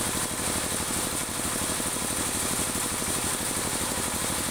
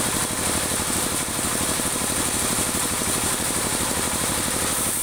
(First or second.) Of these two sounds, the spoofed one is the second